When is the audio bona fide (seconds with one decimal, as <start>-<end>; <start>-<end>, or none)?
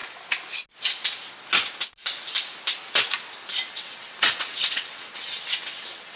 0.0-3.7